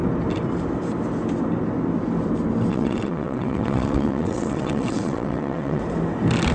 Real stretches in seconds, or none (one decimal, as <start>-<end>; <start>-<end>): 0.0-2.7; 5.8-6.5